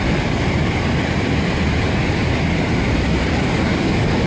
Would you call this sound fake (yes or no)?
no